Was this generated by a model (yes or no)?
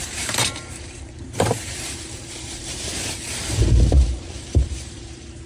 yes